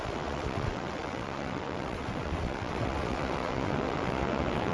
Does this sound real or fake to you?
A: fake